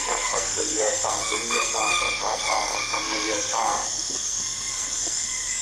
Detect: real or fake fake